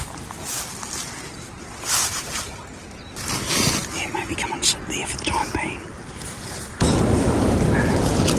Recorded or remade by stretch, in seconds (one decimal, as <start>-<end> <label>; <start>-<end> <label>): 0.0-2.0 recorded; 2.0-3.1 remade; 3.1-8.4 recorded